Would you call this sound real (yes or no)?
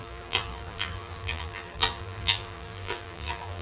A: no